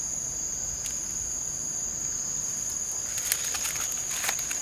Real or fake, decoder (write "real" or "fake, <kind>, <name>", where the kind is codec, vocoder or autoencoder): real